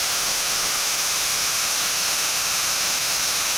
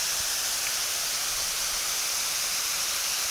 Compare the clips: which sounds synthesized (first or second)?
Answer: first